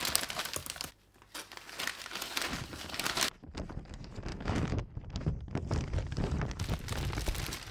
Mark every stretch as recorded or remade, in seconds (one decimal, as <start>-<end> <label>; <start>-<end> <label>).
0.0-4.3 recorded; 4.3-4.9 remade; 4.9-7.7 recorded